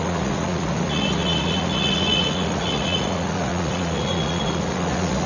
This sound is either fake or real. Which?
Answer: fake